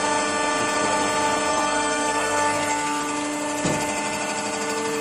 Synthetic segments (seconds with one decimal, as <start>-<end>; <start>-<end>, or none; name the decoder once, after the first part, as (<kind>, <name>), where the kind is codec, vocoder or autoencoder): 1.5-3.0 (codec, SNAC)